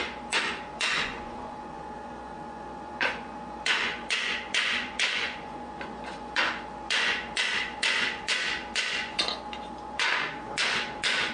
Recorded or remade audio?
remade